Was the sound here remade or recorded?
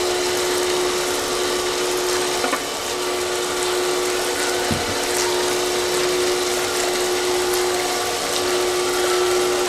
recorded